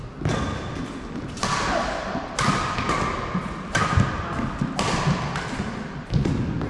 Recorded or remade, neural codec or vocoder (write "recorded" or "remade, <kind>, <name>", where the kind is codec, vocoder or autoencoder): recorded